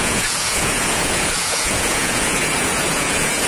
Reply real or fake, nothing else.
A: fake